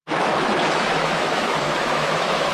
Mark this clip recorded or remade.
remade